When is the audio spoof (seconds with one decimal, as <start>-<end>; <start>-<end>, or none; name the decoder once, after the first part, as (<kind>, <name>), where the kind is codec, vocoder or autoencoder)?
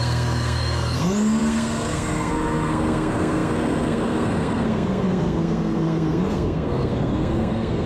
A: 0.0-7.9 (codec, SNAC)